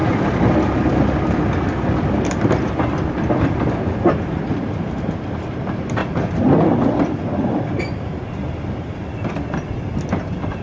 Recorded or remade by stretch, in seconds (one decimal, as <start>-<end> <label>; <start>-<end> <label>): 0.0-10.6 recorded